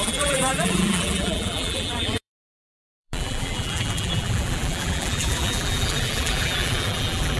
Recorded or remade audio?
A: remade